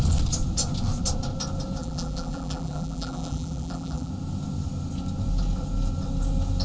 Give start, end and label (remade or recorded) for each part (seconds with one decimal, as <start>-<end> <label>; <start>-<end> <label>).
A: 0.0-1.8 recorded; 1.8-4.1 remade; 4.1-6.6 recorded